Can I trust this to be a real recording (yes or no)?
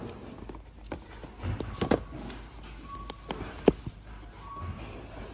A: yes